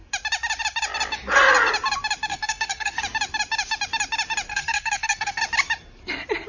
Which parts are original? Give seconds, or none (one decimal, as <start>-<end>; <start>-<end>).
0.0-2.3; 3.0-4.5; 5.4-6.5